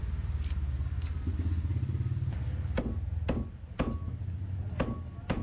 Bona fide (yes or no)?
yes